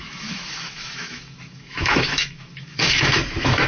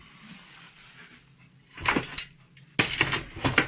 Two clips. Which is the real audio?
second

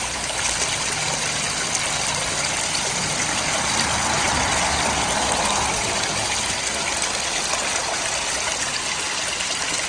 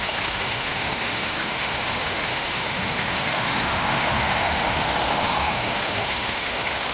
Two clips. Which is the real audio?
first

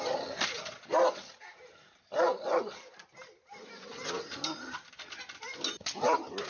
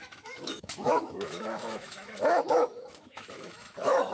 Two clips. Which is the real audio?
first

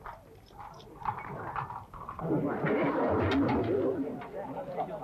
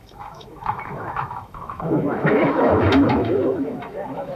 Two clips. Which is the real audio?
first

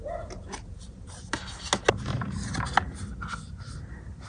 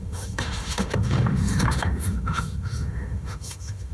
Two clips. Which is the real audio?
first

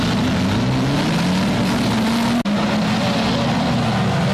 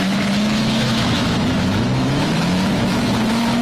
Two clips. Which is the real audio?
first